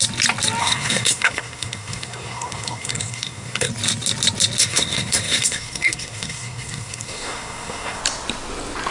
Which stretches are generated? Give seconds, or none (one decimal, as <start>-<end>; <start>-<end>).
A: 0.6-3.7; 4.6-8.0